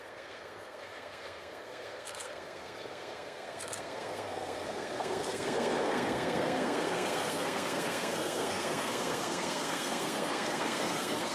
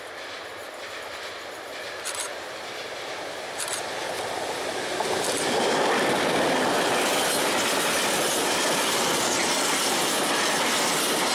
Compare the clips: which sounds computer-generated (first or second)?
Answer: first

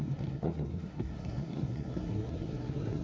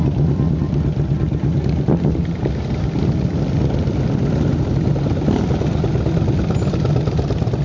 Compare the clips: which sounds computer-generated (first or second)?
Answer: first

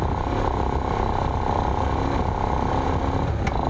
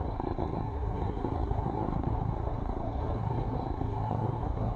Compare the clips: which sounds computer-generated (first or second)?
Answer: second